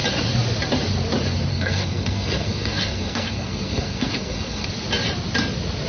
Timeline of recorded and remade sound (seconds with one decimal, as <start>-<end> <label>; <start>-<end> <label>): 0.0-1.5 recorded; 1.5-4.7 remade; 4.7-5.9 recorded